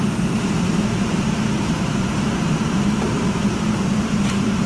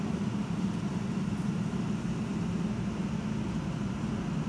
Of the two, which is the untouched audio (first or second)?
second